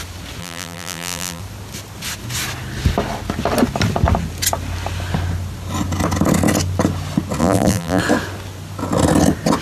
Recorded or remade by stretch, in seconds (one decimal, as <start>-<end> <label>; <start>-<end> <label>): 0.0-0.4 recorded; 0.4-1.4 remade; 1.4-7.4 recorded; 7.4-8.0 remade; 8.0-9.6 recorded